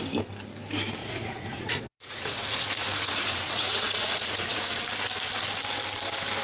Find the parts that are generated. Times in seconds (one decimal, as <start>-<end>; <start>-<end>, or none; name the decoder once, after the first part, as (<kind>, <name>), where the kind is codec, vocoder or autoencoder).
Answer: 1.0-4.8 (vocoder, Vocos)